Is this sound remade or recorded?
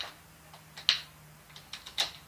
recorded